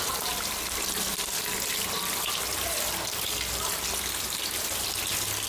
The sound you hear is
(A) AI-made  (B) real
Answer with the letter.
B